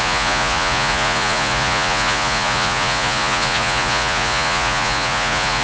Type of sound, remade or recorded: remade